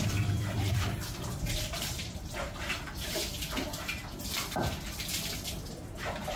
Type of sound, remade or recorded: remade